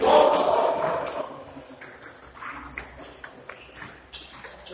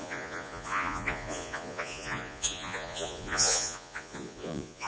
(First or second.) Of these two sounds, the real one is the first